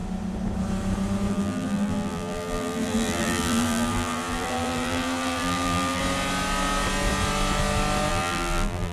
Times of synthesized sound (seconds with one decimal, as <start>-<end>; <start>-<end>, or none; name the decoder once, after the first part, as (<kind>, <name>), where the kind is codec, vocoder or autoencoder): 1.3-6.0 (vocoder, BigVGAN v2); 8.1-8.9